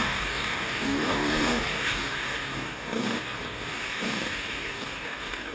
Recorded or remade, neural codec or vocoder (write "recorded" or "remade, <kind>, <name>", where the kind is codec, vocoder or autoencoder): remade, codec, DAC